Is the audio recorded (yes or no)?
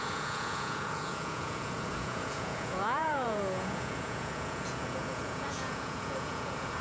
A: no